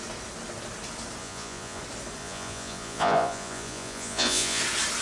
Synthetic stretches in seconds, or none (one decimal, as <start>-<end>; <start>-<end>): 1.2-1.8; 2.2-4.6